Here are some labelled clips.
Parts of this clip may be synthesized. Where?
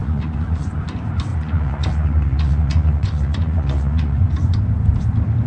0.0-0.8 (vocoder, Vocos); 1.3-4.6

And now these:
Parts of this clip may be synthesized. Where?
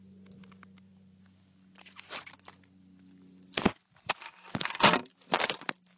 0.9-4.5 (vocoder, BigVGAN v2)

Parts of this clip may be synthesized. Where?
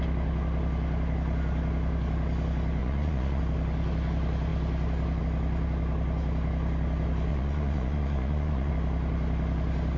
2.8-3.4 (vocoder, Vocos); 7.3-8.7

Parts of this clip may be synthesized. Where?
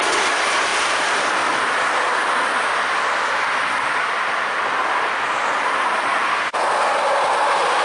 none